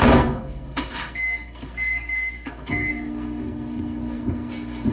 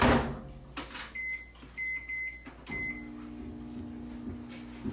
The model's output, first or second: first